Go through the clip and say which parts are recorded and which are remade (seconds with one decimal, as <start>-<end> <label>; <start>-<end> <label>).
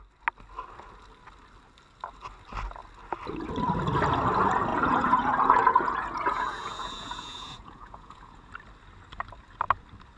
0.0-4.7 recorded; 4.7-8.5 remade; 8.5-10.2 recorded